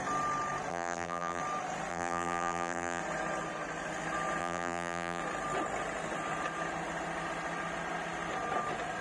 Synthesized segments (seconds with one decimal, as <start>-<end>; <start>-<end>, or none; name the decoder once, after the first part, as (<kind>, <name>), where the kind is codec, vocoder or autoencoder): 0.7-1.4 (vocoder, BigVGAN v2); 1.9-3.0; 4.4-5.2